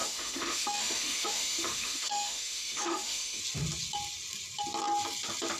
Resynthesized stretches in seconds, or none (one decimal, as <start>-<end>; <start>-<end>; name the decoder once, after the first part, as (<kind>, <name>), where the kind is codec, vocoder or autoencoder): 0.0-3.4 (autoencoder, DAC-VAE)